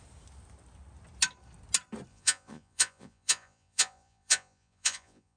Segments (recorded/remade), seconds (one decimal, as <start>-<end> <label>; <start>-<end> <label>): 0.0-2.1 recorded; 2.1-5.4 remade